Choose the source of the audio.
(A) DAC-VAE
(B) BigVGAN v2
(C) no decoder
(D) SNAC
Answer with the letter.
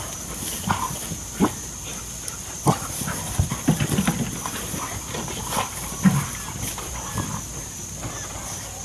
C